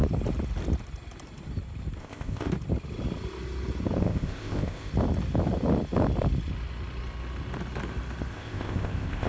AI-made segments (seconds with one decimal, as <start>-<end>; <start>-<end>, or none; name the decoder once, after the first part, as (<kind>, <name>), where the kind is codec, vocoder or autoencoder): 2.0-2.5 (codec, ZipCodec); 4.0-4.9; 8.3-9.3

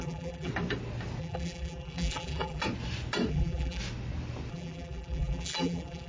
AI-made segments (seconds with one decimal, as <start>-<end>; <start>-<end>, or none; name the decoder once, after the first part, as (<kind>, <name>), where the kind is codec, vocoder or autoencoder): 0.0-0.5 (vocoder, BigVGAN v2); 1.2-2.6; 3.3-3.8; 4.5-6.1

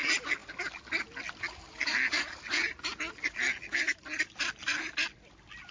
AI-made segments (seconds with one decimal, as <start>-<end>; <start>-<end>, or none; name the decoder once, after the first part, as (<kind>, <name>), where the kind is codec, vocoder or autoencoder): none

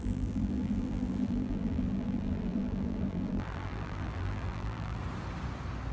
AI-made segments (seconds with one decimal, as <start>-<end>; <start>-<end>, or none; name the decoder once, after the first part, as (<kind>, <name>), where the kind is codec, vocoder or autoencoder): 0.0-5.0 (vocoder, BigVGAN v2)